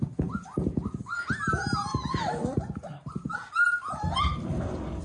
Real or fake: real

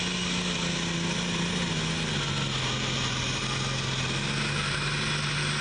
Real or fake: real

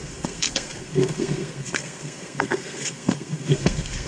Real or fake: fake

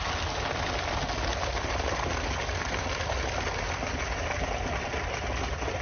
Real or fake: real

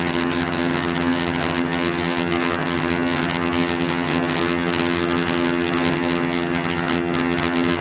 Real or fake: fake